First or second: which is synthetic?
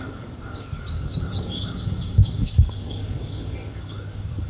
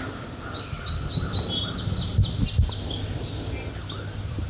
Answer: first